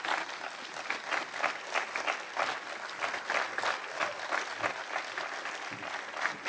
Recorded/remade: recorded